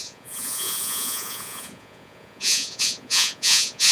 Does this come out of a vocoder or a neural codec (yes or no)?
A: yes